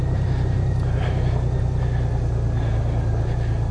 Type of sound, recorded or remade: recorded